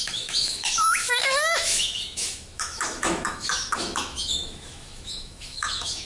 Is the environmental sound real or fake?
fake